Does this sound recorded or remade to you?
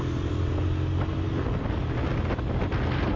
recorded